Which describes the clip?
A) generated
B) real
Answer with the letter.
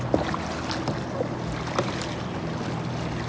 B